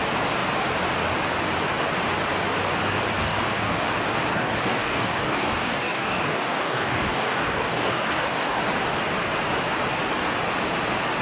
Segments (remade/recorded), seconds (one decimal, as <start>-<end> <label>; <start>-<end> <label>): 0.0-3.2 recorded; 3.2-3.9 remade; 3.9-4.3 recorded; 4.3-8.6 remade; 8.6-11.2 recorded